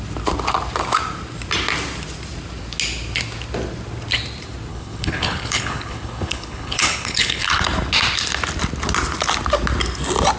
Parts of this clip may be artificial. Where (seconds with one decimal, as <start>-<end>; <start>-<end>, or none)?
4.7-7.4